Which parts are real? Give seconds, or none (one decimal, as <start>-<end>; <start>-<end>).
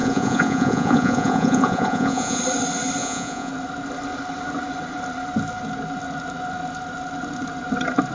2.4-3.0; 3.5-8.1